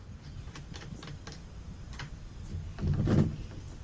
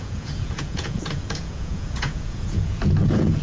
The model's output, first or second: second